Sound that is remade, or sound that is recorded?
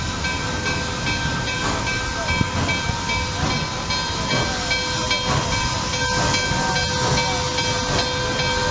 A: recorded